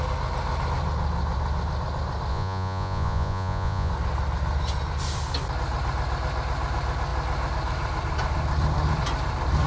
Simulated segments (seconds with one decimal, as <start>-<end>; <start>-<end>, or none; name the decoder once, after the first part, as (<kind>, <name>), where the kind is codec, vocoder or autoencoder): 2.3-3.9 (vocoder, Vocos)